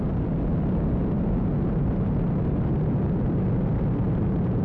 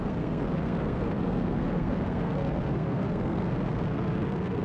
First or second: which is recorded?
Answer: first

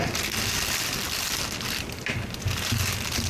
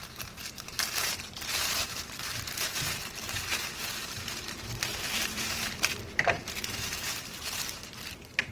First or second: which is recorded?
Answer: first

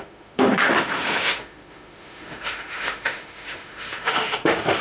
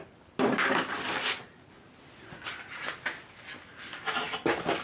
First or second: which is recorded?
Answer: second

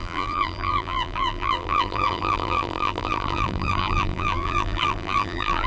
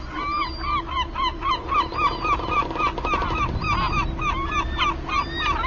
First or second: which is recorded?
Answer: second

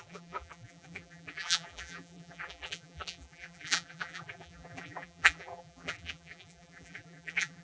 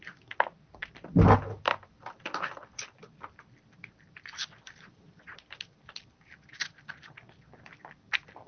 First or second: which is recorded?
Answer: second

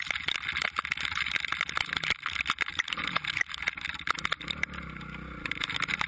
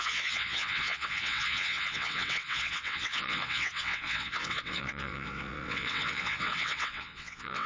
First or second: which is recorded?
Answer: first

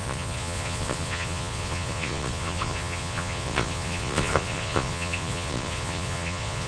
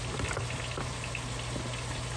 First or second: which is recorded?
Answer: second